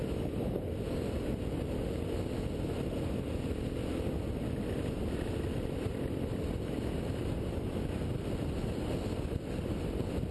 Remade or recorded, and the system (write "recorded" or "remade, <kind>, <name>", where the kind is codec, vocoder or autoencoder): recorded